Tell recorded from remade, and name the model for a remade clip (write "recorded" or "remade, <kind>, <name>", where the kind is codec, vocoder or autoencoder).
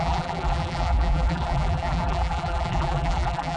remade, vocoder, BigVGAN v2